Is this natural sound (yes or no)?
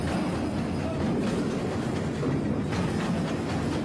yes